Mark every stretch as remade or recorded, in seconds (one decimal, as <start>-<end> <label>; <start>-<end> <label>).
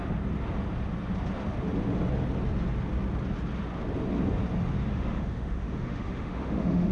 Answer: 0.0-4.9 recorded; 4.9-6.9 remade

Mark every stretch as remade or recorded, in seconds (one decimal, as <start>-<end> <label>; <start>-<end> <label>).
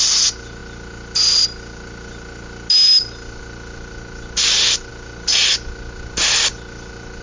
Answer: 0.0-7.2 recorded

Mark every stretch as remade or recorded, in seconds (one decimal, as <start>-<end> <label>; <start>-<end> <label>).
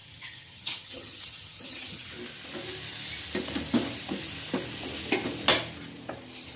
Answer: 0.0-2.1 remade; 2.1-6.6 recorded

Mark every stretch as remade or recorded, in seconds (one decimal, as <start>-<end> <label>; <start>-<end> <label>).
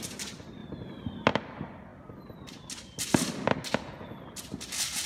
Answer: 0.0-5.1 recorded